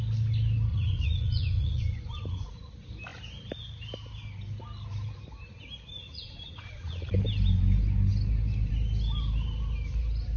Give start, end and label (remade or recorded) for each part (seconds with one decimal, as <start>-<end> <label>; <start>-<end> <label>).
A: 0.0-0.7 recorded; 0.7-2.7 remade; 2.7-6.1 recorded; 6.1-7.1 remade; 7.1-10.4 recorded